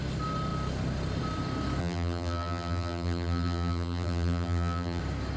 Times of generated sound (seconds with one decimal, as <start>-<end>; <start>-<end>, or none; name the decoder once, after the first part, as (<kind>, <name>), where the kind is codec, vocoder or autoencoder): 1.8-5.0 (vocoder, BigVGAN v2)